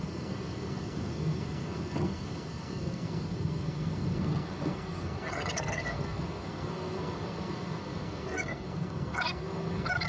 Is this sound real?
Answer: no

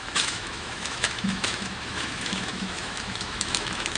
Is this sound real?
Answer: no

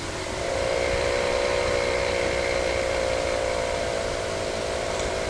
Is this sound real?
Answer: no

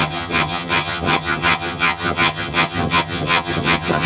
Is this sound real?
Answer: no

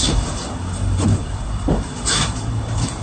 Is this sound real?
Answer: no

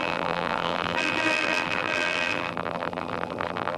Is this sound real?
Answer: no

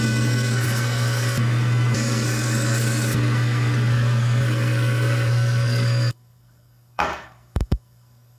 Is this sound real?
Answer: no